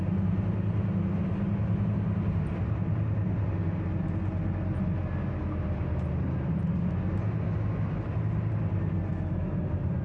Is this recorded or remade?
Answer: recorded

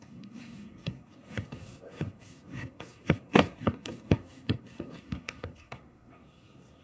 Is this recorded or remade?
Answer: remade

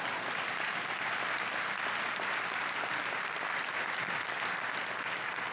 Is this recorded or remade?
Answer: recorded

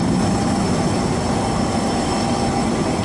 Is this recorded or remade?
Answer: recorded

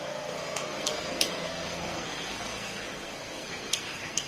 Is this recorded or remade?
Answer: remade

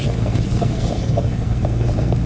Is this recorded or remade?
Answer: remade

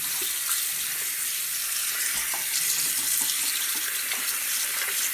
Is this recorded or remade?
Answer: recorded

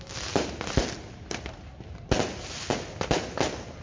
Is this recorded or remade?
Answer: recorded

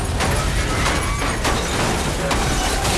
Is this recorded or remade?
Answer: recorded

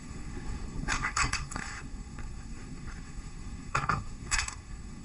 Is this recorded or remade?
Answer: remade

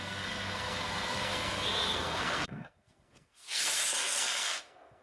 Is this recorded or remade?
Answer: remade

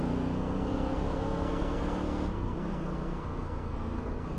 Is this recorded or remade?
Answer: remade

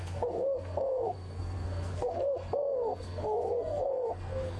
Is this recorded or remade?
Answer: remade